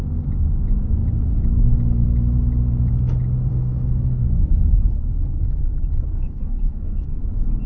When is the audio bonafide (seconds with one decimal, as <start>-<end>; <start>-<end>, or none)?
0.0-3.5; 4.3-6.1; 7.2-7.7